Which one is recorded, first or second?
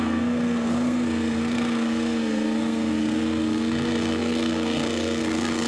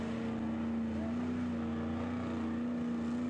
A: second